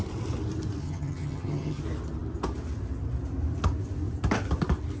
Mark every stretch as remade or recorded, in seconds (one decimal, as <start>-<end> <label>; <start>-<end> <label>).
0.0-0.8 recorded; 0.8-1.8 remade; 1.8-5.0 recorded